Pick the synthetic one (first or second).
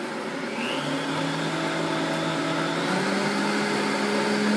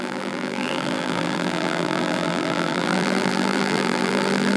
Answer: second